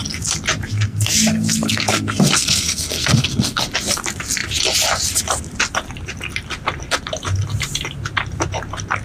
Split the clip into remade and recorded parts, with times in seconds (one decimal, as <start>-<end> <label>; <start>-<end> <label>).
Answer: 0.0-0.7 recorded; 0.7-3.6 remade; 3.6-9.0 recorded